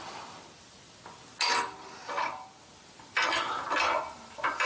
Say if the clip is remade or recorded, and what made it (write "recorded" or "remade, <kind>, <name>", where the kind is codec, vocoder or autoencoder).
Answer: recorded